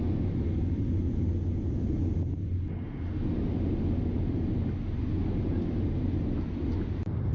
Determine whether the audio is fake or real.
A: real